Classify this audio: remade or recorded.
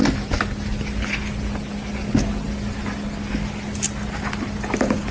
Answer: recorded